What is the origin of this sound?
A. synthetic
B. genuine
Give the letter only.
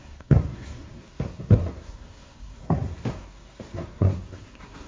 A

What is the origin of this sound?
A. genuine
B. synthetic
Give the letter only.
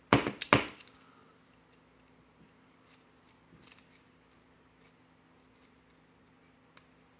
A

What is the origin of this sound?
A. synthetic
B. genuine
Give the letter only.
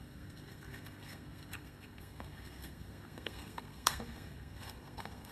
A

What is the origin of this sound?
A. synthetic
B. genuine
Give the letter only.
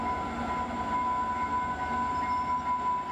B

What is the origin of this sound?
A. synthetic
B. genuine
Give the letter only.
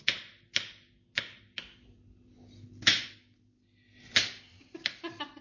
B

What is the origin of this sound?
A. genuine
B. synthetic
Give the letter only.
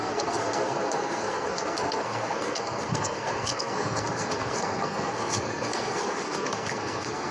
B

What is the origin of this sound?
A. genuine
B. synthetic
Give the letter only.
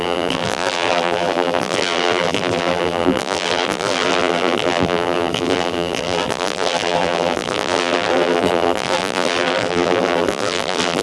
B